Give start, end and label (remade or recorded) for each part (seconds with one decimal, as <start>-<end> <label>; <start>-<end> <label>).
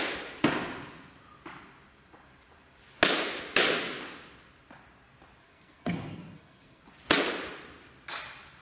0.0-5.4 recorded; 5.4-6.8 remade; 6.8-8.6 recorded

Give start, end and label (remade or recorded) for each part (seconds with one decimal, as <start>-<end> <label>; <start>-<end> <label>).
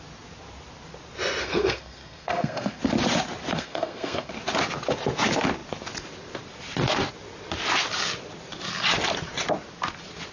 0.0-1.4 recorded; 1.4-2.8 remade; 2.8-3.5 recorded; 3.5-4.3 remade; 4.3-10.3 recorded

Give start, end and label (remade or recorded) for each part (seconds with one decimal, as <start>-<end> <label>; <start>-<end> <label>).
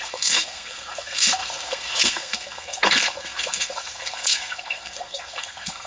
0.0-5.9 remade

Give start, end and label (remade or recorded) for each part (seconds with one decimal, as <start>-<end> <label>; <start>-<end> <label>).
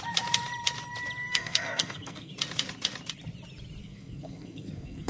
0.0-1.3 recorded; 1.3-2.3 remade; 2.3-3.8 recorded; 3.8-5.1 remade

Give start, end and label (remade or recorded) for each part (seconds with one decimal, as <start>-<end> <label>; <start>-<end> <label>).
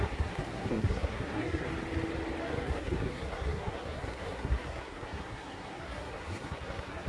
0.0-1.7 remade; 1.7-2.4 recorded; 2.4-7.1 remade